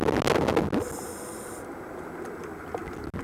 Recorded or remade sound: recorded